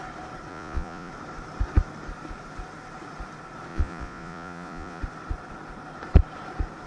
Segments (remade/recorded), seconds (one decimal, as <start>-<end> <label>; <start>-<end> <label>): 0.0-0.5 recorded; 0.5-1.1 remade; 1.1-3.7 recorded; 3.7-5.0 remade; 5.0-6.9 recorded